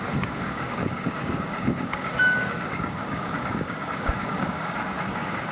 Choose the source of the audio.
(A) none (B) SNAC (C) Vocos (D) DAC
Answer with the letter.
D